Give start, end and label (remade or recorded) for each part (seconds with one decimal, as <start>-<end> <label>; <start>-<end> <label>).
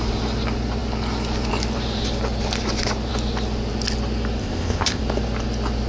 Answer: 0.0-4.4 recorded; 4.4-5.0 remade; 5.0-5.9 recorded